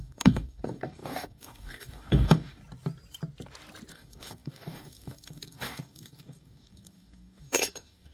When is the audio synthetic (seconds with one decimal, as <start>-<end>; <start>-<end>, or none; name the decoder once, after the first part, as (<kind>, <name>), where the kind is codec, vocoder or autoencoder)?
0.0-2.6 (codec, DAC); 3.9-8.1